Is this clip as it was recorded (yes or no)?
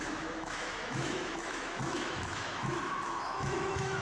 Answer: no